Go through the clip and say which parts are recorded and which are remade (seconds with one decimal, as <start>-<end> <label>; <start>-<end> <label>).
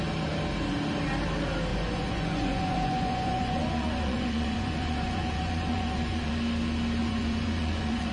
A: 0.0-1.7 recorded; 1.7-6.3 remade; 6.3-7.0 recorded; 7.0-8.1 remade